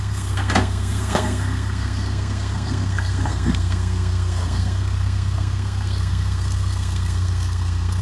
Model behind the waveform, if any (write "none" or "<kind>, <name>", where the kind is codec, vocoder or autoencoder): codec, SNAC